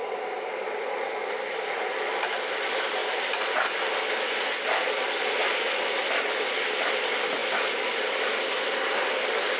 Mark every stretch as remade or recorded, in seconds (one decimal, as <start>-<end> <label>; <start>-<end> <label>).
0.0-9.6 recorded